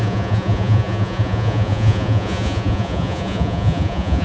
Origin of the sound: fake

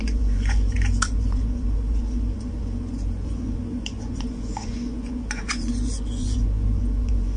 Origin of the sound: fake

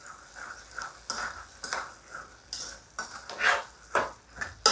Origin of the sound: real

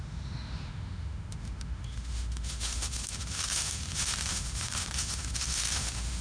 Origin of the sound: fake